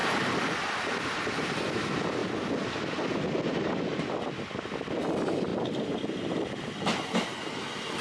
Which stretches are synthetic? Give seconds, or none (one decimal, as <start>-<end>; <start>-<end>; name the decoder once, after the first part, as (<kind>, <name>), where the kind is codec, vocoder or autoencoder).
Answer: none